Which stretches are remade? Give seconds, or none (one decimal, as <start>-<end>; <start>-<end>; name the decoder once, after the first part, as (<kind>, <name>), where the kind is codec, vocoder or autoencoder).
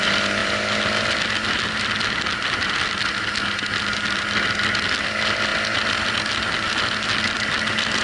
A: none